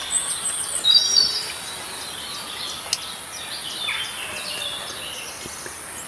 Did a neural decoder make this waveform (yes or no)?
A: no